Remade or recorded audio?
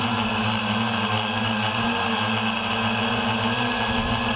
recorded